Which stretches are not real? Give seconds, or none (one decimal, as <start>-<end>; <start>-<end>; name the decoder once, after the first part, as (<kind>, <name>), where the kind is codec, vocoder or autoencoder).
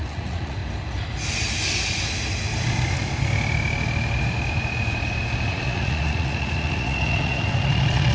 0.0-0.6 (vocoder, Vocos); 5.5-8.1